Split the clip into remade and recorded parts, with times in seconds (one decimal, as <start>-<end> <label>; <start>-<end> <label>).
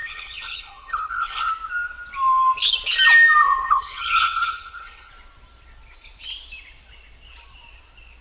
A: 0.0-1.5 remade; 1.5-3.6 recorded; 3.6-5.1 remade; 5.1-8.2 recorded